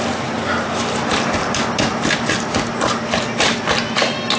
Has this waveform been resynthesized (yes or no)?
no